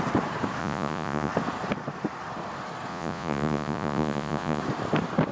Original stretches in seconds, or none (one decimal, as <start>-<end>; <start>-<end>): 0.0-0.6; 1.3-2.9; 4.6-5.3